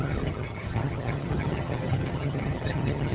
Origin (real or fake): fake